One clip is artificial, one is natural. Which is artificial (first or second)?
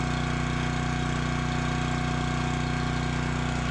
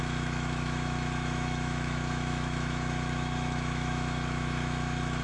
second